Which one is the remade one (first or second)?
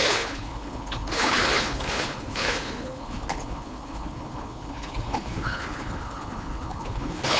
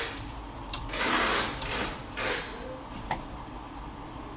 first